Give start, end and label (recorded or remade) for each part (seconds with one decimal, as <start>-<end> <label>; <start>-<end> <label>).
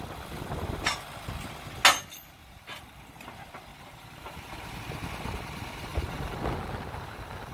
0.0-2.4 recorded; 2.4-2.9 remade; 2.9-3.7 recorded; 3.7-4.8 remade; 4.8-5.9 recorded; 5.9-6.4 remade; 6.4-7.5 recorded